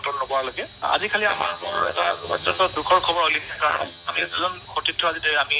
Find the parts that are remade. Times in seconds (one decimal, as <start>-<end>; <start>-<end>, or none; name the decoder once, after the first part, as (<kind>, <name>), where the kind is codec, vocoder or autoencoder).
1.3-2.6 (vocoder, HiFi-GAN); 3.7-4.4